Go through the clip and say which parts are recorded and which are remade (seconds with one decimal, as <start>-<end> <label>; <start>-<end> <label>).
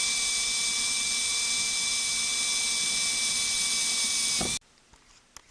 0.0-5.5 recorded